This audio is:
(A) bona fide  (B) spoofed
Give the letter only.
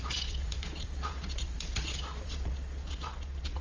B